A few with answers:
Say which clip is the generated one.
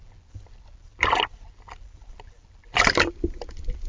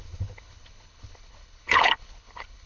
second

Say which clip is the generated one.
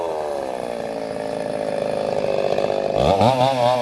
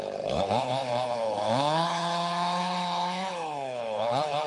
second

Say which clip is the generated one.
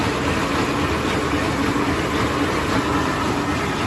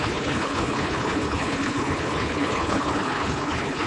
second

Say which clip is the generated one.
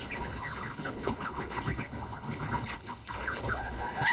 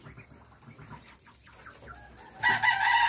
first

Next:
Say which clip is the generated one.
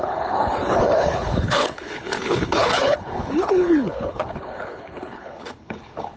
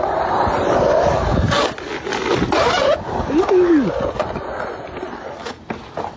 first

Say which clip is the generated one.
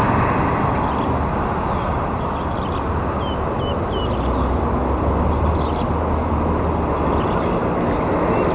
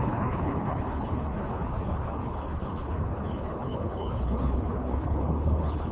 second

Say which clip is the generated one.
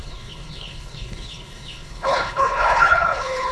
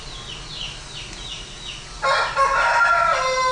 first